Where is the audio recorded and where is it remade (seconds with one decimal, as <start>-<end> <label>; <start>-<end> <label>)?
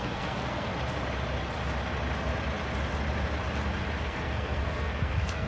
0.0-0.7 remade; 0.7-4.0 recorded; 4.0-5.5 remade